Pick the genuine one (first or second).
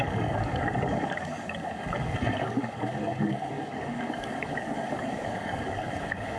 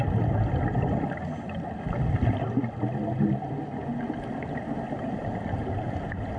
second